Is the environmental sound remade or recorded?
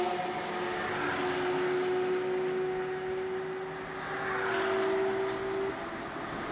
recorded